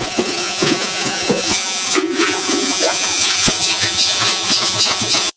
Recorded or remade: remade